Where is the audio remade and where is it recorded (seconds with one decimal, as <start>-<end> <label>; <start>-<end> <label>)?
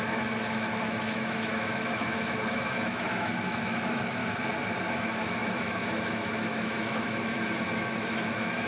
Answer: 0.0-4.2 remade; 4.2-4.9 recorded; 4.9-8.7 remade